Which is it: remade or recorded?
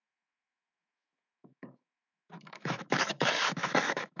remade